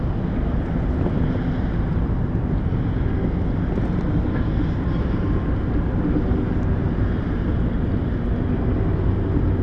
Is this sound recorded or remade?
recorded